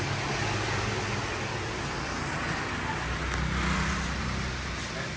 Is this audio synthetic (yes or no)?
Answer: no